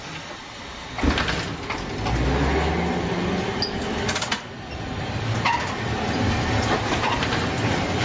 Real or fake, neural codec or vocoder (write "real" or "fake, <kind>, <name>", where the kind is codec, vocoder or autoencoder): real